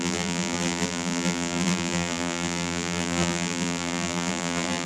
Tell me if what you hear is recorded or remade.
remade